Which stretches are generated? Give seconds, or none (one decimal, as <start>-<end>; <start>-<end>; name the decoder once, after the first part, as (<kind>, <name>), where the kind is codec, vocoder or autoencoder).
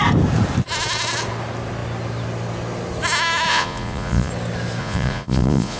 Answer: 3.5-4.3 (vocoder, Vocos); 4.8-5.8